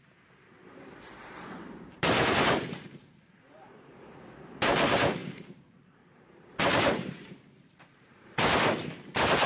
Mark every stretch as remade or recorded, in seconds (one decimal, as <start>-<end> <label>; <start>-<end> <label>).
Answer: 0.0-0.6 recorded; 0.6-4.1 remade; 4.1-5.2 recorded; 5.2-9.0 remade; 9.0-9.5 recorded